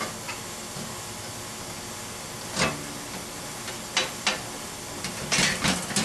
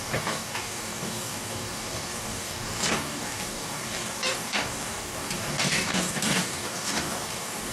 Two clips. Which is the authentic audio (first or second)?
first